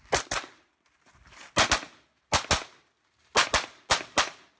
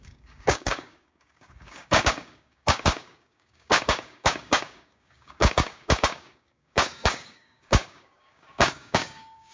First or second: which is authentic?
first